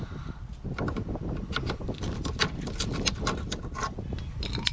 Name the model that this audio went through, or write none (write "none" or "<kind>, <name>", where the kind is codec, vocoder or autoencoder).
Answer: none